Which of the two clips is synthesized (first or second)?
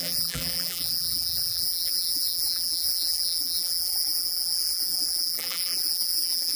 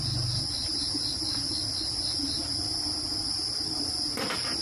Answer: first